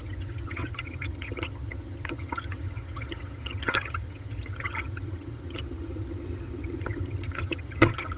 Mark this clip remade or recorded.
remade